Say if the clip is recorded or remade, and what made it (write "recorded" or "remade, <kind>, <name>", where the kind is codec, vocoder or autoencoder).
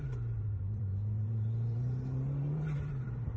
remade, vocoder, BigVGAN v2